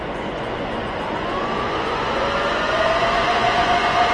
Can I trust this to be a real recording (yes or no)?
no